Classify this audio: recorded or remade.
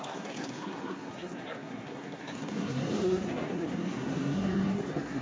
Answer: remade